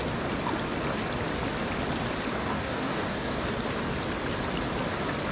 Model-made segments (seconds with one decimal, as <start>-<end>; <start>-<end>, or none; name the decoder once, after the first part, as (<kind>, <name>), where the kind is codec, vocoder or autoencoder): 2.4-3.5 (codec, DAC)